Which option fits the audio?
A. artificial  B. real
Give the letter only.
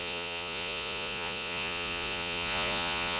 A